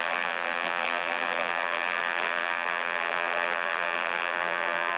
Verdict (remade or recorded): remade